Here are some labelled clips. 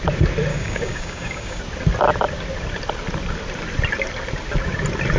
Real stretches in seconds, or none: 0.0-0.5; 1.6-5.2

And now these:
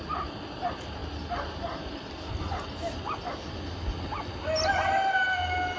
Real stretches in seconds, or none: 0.0-5.8

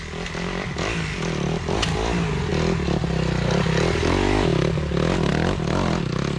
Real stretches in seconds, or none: 0.0-6.4

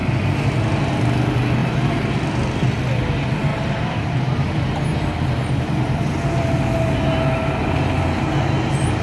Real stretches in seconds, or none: 0.0-1.6; 2.1-3.5; 4.8-9.0

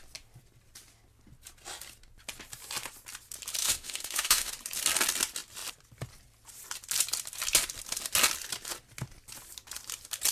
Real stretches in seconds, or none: 0.0-3.6; 4.5-10.3

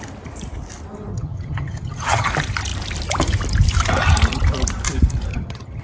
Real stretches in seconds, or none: 0.0-1.1; 2.3-5.3

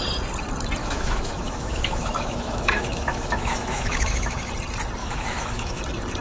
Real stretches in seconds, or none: 0.0-0.8; 4.5-5.0; 5.8-6.2

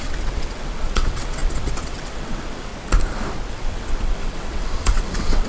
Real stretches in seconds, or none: 2.7-3.5